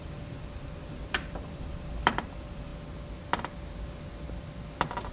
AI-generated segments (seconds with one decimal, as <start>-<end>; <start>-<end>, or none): 0.0-2.7